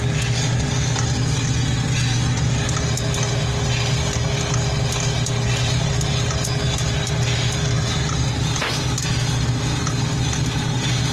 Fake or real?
real